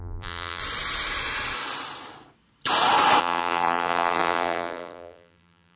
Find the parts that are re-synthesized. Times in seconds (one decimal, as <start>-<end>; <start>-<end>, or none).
0.0-0.6; 3.2-5.8